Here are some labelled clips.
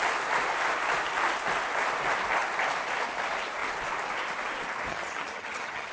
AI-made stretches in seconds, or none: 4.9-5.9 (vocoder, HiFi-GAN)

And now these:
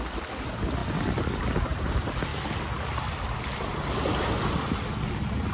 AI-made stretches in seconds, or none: none

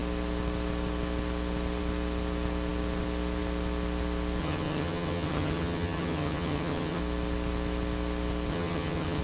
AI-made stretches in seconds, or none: 4.4-7.0 (vocoder, HiFi-GAN); 8.5-9.2

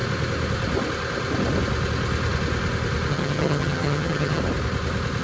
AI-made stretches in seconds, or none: 3.1-4.4 (vocoder, HiFi-GAN)

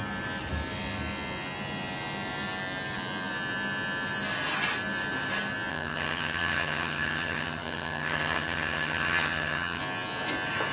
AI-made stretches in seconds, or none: 5.7-9.8 (vocoder, HiFi-GAN)

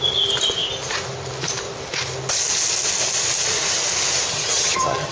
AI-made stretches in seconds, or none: 4.3-5.1 (vocoder, HiFi-GAN)

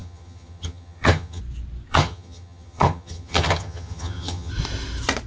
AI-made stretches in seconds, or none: 0.0-1.4 (vocoder, HiFi-GAN); 1.9-4.5

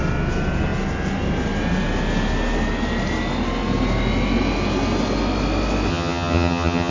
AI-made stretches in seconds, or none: 5.9-6.9 (vocoder, HiFi-GAN)